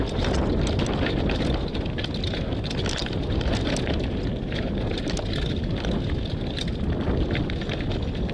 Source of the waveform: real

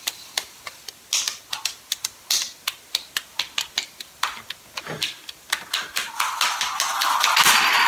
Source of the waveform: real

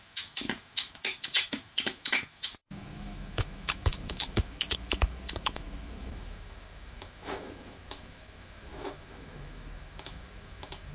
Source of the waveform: fake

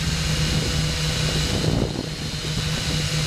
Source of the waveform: real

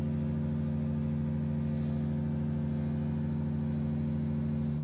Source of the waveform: real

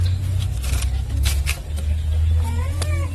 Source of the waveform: real